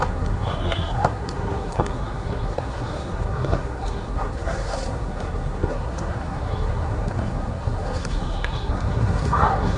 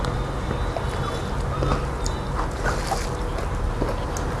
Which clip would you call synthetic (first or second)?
first